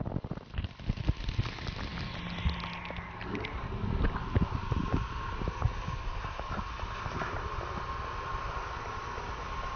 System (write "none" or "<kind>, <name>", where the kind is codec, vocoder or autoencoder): none